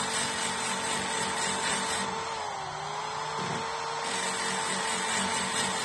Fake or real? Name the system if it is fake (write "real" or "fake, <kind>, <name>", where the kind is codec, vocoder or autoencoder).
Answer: real